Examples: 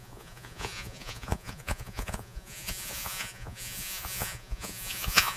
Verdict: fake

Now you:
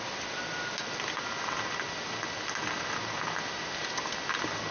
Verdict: real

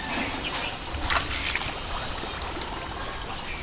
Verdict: real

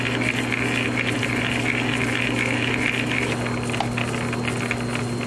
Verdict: real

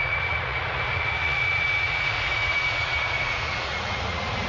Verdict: fake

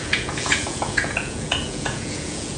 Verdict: fake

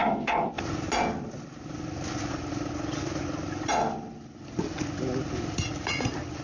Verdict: real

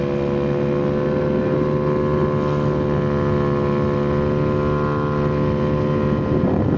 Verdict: real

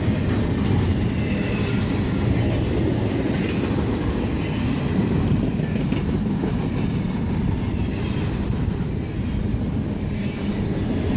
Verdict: real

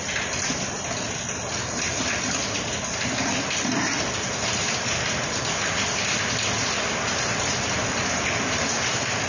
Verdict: real